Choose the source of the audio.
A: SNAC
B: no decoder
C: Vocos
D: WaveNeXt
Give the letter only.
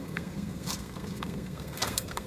A